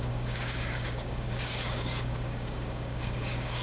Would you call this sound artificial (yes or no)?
yes